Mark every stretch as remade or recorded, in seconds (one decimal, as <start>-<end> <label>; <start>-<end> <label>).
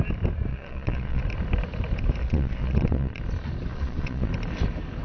0.0-0.5 recorded; 0.5-1.2 remade; 1.2-2.2 recorded; 2.2-3.2 remade; 3.2-3.7 recorded; 3.7-4.3 remade; 4.3-5.0 recorded